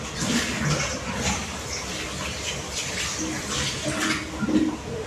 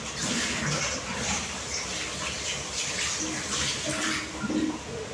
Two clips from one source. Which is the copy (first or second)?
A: second